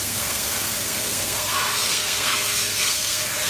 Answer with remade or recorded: remade